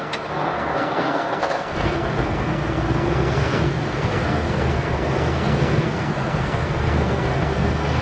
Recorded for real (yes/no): no